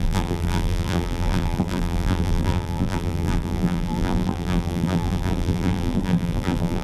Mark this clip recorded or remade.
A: remade